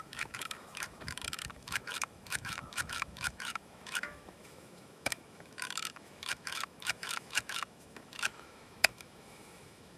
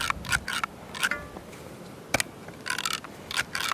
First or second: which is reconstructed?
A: first